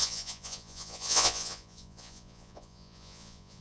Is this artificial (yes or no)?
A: yes